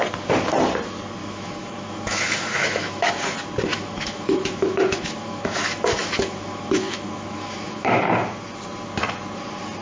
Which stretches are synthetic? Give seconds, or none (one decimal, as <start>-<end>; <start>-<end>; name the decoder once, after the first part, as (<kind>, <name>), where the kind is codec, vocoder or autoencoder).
1.2-3.1 (autoencoder, DAC-VAE); 3.7-8.0